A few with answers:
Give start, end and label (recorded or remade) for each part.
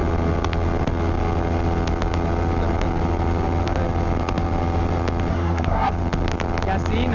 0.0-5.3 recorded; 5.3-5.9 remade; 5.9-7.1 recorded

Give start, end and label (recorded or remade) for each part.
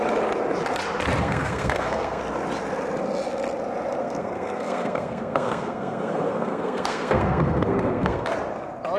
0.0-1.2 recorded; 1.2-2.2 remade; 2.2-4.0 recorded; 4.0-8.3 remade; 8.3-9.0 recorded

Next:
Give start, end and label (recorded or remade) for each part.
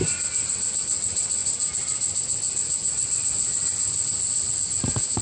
0.0-5.2 recorded